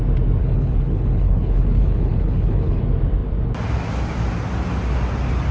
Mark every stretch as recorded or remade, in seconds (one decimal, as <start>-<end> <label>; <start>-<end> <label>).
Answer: 0.0-0.4 recorded; 0.4-2.8 remade; 2.8-5.5 recorded